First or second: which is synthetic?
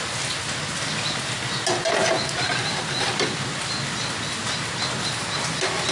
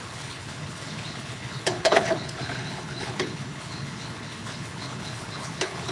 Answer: second